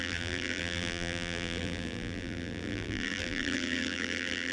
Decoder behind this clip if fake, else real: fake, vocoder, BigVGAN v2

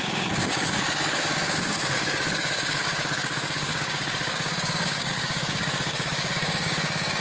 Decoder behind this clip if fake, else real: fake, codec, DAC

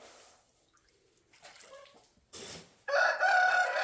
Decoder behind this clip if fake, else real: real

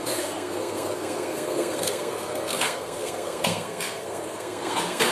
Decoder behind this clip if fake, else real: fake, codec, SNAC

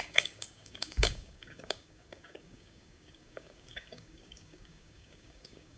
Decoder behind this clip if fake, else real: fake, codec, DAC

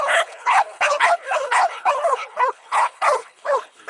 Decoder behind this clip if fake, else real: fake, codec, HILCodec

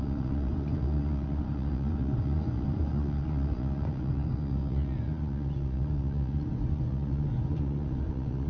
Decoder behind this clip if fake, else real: fake, vocoder, Vocos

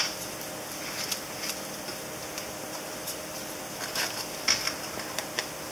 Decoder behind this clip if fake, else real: real